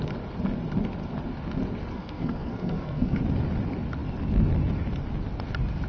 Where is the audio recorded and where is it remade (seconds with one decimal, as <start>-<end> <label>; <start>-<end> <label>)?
0.0-1.9 recorded; 1.9-3.2 remade; 3.2-5.9 recorded